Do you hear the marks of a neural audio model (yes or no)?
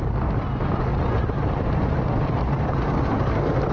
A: no